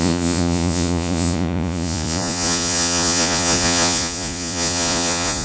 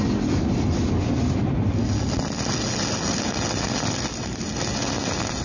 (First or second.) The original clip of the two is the second